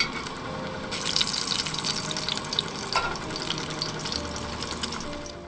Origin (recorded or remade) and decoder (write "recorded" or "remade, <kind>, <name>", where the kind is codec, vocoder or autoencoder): recorded